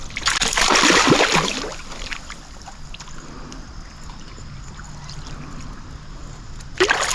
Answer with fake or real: real